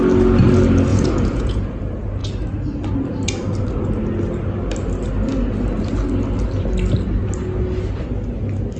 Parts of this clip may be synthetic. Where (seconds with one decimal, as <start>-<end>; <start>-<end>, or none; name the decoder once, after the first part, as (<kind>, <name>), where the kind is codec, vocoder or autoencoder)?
0.9-1.8 (vocoder, Vocos)